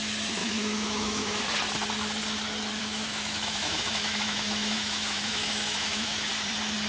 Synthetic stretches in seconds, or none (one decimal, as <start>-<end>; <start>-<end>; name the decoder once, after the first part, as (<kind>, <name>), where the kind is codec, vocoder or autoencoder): 0.4-1.4 (autoencoder, DAC-VAE); 2.8-6.3